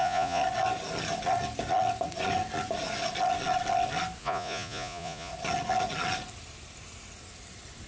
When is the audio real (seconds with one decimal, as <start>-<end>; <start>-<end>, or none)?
0.4-4.2; 5.3-7.9